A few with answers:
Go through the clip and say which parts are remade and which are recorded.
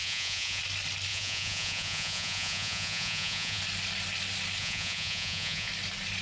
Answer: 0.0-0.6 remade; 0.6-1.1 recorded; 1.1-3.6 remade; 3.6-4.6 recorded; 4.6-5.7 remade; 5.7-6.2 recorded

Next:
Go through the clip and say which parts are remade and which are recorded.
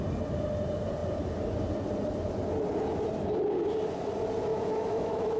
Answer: 0.0-4.5 recorded; 4.5-5.4 remade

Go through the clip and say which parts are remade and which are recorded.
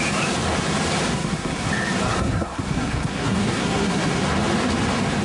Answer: 0.0-1.1 recorded; 1.1-1.7 remade; 1.7-2.1 recorded; 2.1-4.2 remade; 4.2-5.2 recorded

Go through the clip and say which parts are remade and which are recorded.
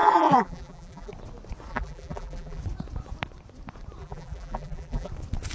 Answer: 0.0-1.1 remade; 1.1-1.7 recorded; 1.7-2.6 remade; 2.6-4.0 recorded; 4.0-5.1 remade; 5.1-5.5 recorded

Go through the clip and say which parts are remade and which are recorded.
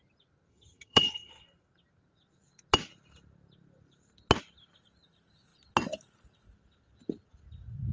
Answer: 0.0-0.5 recorded; 0.5-1.3 remade; 1.3-7.9 recorded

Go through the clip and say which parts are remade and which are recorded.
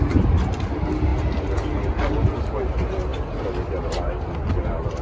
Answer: 0.0-5.0 recorded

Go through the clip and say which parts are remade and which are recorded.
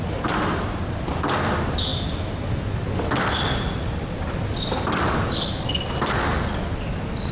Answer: 0.0-7.3 recorded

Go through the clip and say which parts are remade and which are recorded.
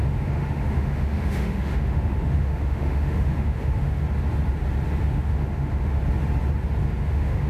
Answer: 0.0-4.0 remade; 4.0-5.0 recorded; 5.0-6.0 remade; 6.0-7.0 recorded; 7.0-7.5 remade